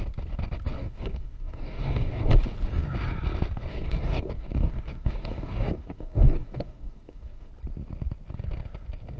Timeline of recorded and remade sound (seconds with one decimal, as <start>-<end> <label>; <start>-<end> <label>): 0.0-0.8 recorded; 0.8-2.2 remade; 2.2-3.7 recorded; 3.7-7.5 remade; 7.5-9.2 recorded